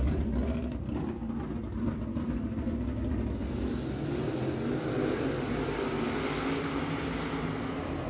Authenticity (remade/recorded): recorded